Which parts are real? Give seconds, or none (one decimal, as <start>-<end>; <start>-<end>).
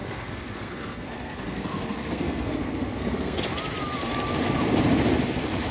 3.4-5.7